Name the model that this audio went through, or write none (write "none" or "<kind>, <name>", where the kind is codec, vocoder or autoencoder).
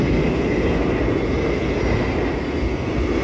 none